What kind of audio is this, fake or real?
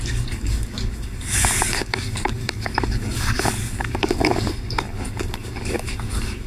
fake